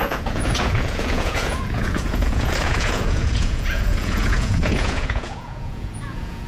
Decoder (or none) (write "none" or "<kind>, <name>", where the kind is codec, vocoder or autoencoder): vocoder, Vocos